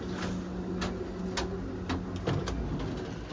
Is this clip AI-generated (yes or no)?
no